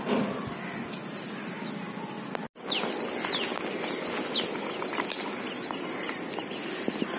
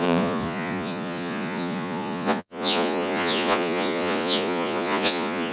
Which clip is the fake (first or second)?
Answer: second